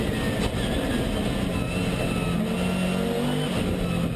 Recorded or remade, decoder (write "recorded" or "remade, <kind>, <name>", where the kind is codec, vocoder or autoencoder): recorded